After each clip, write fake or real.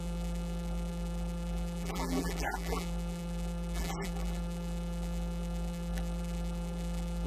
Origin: fake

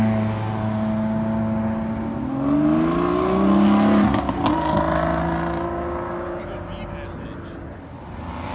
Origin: real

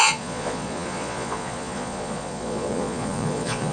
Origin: fake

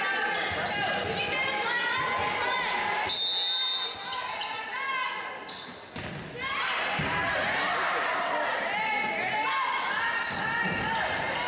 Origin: real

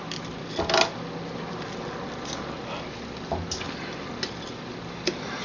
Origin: real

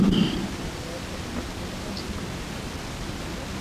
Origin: real